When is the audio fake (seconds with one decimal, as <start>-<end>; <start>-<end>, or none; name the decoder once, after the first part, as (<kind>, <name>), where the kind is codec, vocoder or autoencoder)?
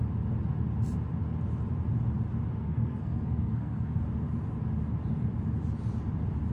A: 2.6-4.0 (codec, SNAC)